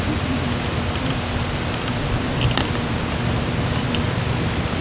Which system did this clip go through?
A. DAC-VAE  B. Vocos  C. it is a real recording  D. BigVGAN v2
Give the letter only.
C